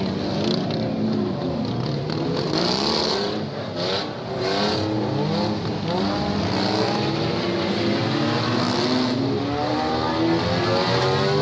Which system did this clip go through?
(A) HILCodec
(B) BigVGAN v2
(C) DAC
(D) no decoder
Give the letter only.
D